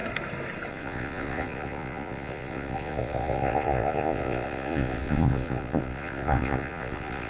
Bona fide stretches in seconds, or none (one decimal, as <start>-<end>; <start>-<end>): 0.0-0.7